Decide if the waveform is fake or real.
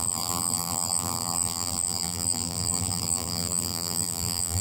fake